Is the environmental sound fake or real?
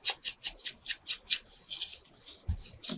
real